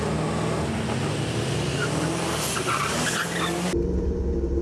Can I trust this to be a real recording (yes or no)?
yes